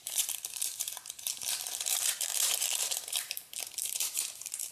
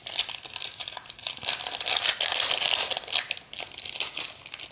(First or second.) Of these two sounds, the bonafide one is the second